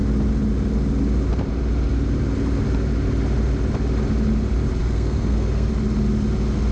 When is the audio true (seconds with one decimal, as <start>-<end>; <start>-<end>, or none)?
0.0-4.8; 5.7-6.7